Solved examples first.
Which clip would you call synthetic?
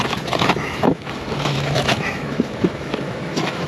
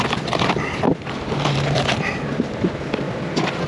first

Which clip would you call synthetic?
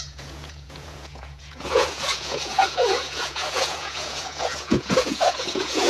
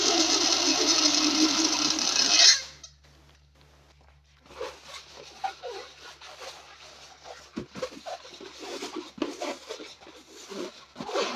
first